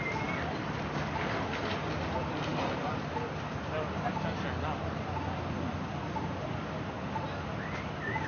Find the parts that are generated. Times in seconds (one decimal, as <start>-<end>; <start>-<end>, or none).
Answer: none

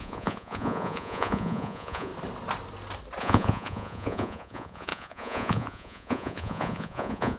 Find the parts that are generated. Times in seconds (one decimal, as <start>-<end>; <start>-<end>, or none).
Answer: 0.0-2.1; 3.2-7.4

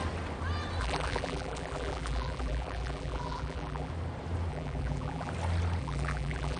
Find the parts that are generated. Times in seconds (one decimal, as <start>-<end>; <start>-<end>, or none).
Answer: 0.8-3.9; 4.5-5.3; 5.8-6.6

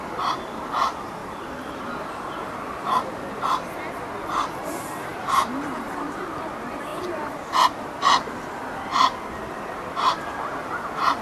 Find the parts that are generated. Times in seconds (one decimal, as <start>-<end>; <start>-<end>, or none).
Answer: 1.2-3.4; 5.1-6.5